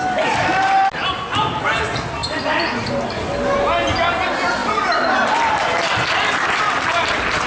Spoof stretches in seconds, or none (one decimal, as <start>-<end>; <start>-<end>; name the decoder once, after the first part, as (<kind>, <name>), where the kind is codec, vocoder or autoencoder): 2.2-2.9 (vocoder, BigVGAN v2); 4.6-5.3